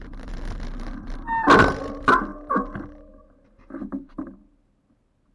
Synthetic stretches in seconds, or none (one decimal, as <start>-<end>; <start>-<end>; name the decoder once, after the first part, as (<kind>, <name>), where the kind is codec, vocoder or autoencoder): none